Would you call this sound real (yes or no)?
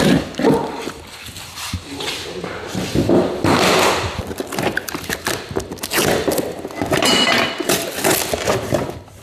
yes